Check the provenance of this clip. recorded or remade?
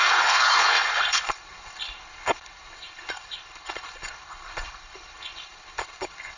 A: remade